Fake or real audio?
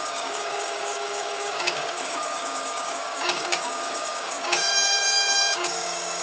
fake